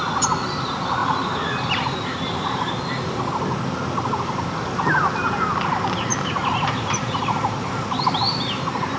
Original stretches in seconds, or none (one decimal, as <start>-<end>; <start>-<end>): 0.0-1.0; 2.7-6.1; 8.2-9.0